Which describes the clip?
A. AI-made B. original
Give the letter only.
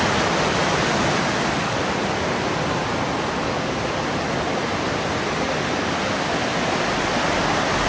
B